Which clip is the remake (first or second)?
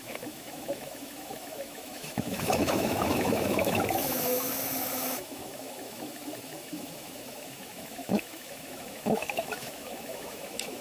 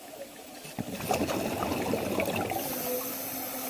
first